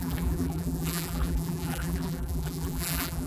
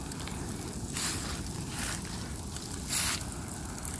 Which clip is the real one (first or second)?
second